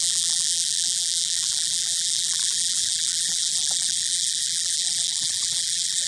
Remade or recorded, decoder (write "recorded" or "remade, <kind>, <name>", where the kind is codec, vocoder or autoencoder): remade, vocoder, BigVGAN v2